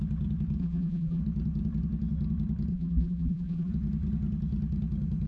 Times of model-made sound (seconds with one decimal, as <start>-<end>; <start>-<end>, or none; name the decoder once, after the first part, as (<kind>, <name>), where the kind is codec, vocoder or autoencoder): 0.6-1.2 (vocoder, BigVGAN v2); 2.7-3.7